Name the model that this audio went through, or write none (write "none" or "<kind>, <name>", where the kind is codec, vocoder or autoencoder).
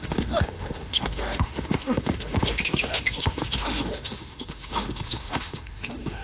autoencoder, DAC-VAE